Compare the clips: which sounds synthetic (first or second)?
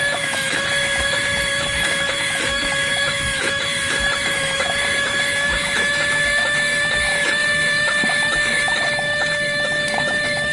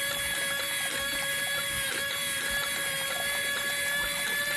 first